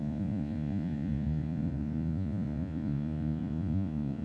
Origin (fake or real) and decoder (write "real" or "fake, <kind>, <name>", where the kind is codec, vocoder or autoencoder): fake, vocoder, Vocos